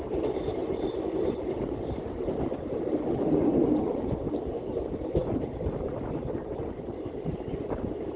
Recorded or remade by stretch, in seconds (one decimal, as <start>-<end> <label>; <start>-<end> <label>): 0.0-8.2 recorded